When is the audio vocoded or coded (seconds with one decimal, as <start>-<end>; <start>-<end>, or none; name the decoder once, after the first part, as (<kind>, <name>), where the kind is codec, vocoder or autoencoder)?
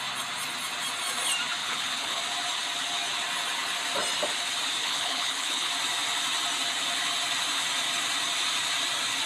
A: 1.6-2.2 (codec, HILCodec); 4.8-5.7